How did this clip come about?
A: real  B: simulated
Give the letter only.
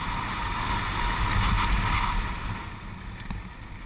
A